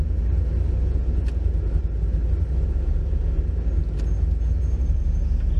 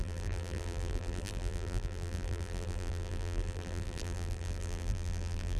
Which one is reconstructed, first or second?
second